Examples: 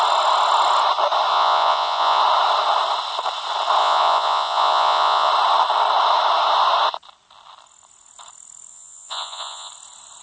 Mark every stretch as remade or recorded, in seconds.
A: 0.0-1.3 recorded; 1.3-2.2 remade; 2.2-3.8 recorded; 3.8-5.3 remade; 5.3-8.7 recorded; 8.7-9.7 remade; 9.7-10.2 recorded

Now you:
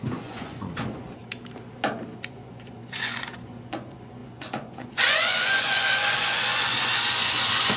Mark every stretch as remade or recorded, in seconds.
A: 0.0-1.2 remade; 1.2-2.3 recorded; 2.3-7.8 remade

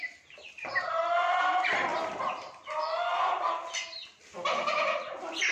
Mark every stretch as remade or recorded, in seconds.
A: 0.0-5.5 recorded

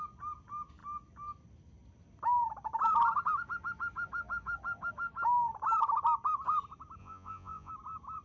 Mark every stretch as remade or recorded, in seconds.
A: 0.0-7.0 recorded; 7.0-7.7 remade; 7.7-8.2 recorded

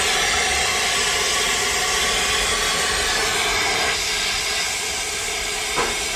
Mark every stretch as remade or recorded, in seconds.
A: 0.0-6.2 recorded

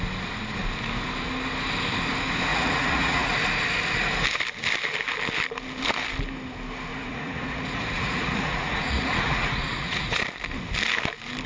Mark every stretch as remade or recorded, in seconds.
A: 0.0-2.5 recorded; 2.5-3.3 remade; 3.3-6.9 recorded; 6.9-10.2 remade; 10.2-11.5 recorded

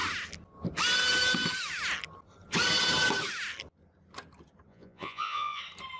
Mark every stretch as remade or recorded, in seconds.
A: 0.0-4.7 recorded; 4.7-5.6 remade; 5.6-6.0 recorded

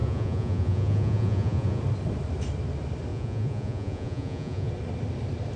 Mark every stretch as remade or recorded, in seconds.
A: 0.0-1.8 remade; 1.8-3.1 recorded; 3.1-4.7 remade; 4.7-5.6 recorded